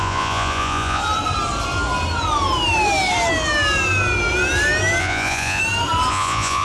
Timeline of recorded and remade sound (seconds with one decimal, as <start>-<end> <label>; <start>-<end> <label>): 0.0-1.0 remade; 1.0-5.0 recorded; 5.0-5.6 remade; 5.6-6.1 recorded; 6.1-6.6 remade